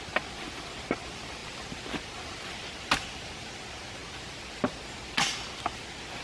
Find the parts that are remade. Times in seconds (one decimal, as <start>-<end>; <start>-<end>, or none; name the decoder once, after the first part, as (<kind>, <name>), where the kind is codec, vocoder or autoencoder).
none